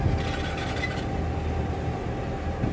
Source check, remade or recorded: recorded